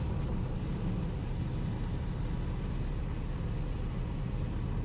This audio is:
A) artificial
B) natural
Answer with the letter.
B